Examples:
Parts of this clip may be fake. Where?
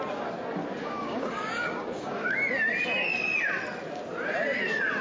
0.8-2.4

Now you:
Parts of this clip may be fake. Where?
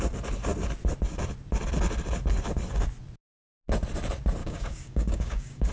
4.4-5.7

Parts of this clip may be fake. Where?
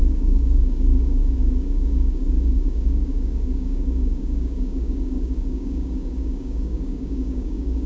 0.0-7.9